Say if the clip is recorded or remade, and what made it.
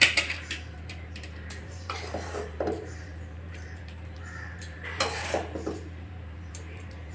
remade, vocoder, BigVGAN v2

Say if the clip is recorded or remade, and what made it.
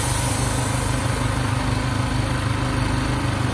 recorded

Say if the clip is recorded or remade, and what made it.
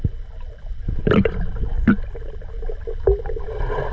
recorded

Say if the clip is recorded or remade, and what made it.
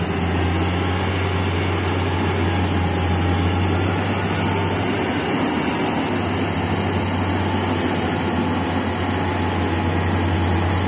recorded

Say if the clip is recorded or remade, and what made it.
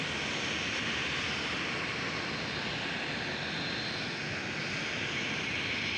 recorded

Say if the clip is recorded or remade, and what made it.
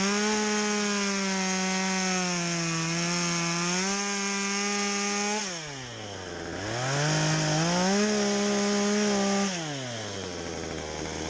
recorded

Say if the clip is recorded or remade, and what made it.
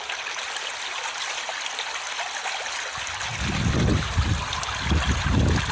recorded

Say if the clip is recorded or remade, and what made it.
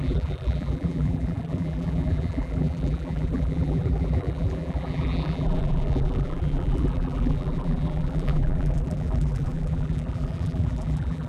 remade, vocoder, BigVGAN v2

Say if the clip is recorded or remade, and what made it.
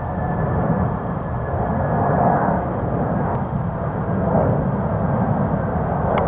recorded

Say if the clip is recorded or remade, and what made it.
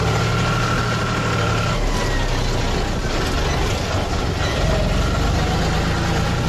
recorded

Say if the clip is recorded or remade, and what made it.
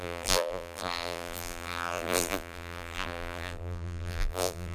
remade, vocoder, BigVGAN v2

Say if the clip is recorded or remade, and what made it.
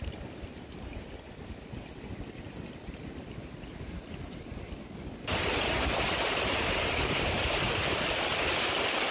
recorded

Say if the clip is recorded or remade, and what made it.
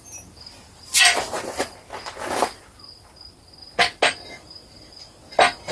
recorded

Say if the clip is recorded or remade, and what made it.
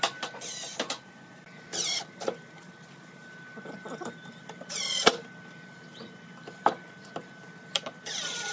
recorded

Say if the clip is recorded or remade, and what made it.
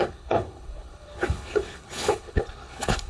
remade, codec, HILCodec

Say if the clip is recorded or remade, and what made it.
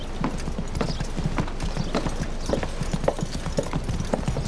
recorded